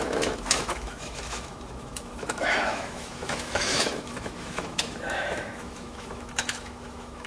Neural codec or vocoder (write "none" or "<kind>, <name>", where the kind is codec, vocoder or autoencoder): autoencoder, DAC-VAE